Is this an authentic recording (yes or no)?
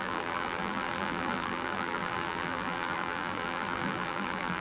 no